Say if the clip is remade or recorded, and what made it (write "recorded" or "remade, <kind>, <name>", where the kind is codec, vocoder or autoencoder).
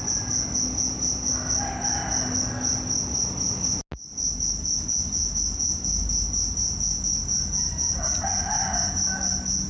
recorded